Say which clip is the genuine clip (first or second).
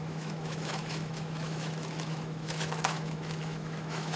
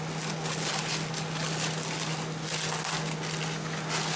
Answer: second